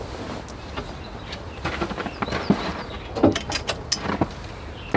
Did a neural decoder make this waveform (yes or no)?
no